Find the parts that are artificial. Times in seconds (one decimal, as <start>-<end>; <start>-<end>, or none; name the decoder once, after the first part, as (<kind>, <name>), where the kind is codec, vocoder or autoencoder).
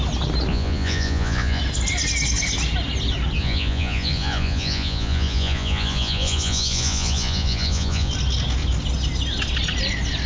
0.5-1.6 (vocoder, Vocos); 3.4-8.1